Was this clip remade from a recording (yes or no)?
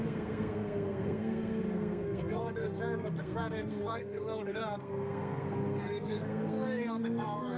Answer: yes